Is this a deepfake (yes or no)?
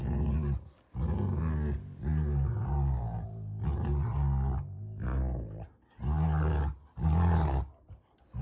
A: no